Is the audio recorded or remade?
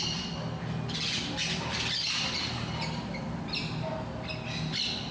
recorded